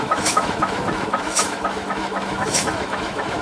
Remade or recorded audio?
remade